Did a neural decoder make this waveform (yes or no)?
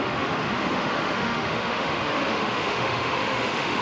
yes